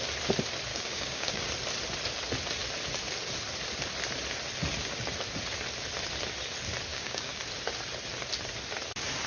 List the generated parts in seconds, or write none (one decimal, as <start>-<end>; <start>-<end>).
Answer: 0.7-1.4; 6.9-7.4